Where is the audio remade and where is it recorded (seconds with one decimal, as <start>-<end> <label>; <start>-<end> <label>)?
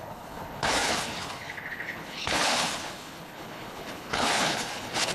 0.0-5.1 remade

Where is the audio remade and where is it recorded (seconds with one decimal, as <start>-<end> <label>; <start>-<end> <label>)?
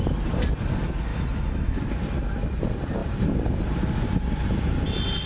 0.0-1.1 recorded; 1.1-1.8 remade; 1.8-5.3 recorded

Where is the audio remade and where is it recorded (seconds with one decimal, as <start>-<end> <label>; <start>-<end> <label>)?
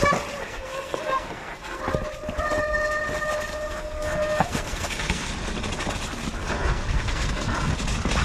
0.0-0.4 recorded; 0.4-1.8 remade; 1.8-3.5 recorded; 3.5-5.3 remade; 5.3-6.4 recorded; 6.4-7.7 remade; 7.7-8.2 recorded